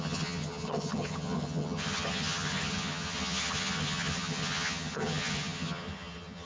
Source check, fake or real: fake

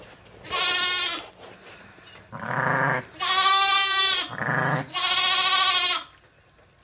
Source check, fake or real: real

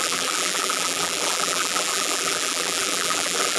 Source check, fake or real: fake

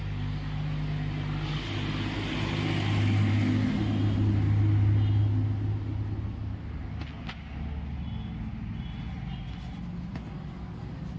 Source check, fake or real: real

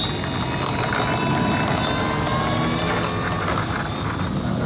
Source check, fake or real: real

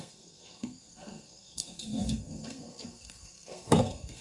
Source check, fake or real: fake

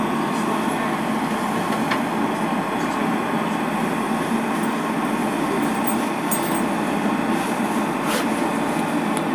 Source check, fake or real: real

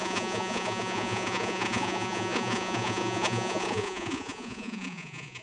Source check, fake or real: fake